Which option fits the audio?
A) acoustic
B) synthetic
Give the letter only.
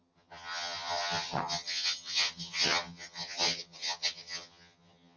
B